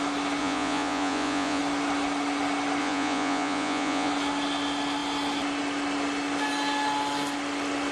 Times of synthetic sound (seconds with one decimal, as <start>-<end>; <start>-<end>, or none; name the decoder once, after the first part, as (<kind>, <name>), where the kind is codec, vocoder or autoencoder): 0.4-1.6 (vocoder, Vocos); 2.8-4.1